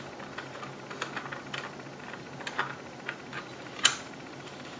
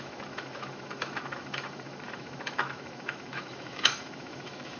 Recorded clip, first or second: first